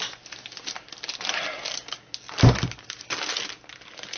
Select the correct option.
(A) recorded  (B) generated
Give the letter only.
A